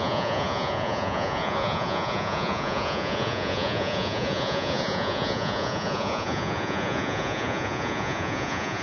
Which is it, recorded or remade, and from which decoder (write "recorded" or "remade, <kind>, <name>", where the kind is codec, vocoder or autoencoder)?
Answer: remade, vocoder, Vocos